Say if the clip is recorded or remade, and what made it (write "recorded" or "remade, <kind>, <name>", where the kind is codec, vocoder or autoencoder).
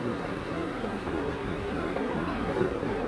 remade, codec, SNAC